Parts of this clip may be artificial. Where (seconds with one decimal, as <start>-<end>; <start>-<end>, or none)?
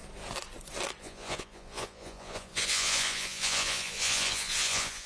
1.0-5.1